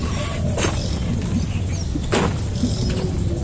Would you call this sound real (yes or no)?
yes